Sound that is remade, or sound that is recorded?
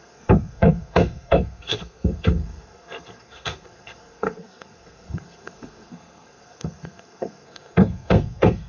remade